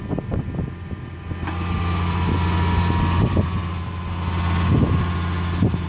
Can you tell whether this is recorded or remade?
recorded